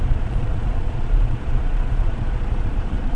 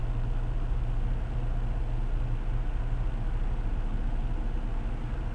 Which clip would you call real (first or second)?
second